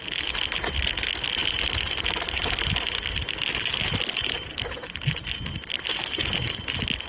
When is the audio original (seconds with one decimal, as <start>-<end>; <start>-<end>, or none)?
0.0-7.1

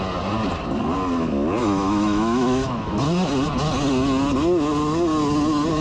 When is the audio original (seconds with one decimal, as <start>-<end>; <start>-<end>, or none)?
0.0-1.6; 3.0-5.8